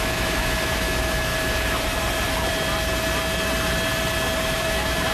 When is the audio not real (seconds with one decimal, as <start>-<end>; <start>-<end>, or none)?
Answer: 0.0-1.3; 4.4-5.1